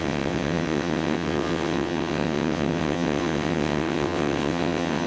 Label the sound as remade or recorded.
remade